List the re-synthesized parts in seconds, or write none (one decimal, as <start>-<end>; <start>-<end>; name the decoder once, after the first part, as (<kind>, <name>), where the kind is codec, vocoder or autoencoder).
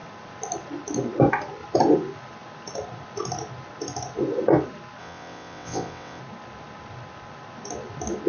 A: 5.0-6.2 (vocoder, WaveNeXt)